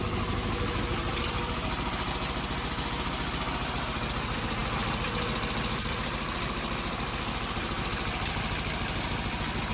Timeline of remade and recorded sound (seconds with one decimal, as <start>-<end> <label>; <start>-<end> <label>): 0.0-9.7 recorded